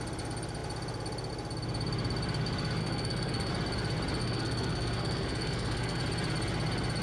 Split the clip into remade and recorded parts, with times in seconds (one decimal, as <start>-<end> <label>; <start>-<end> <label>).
0.0-2.8 recorded; 2.8-3.5 remade; 3.5-4.2 recorded; 4.2-6.0 remade; 6.0-7.0 recorded